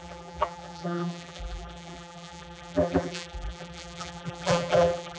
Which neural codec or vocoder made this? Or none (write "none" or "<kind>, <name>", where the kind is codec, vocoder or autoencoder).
vocoder, BigVGAN v2